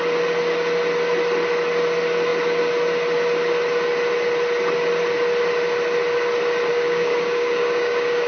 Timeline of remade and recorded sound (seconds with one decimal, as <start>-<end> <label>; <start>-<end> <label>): 0.0-6.7 recorded; 6.7-8.3 remade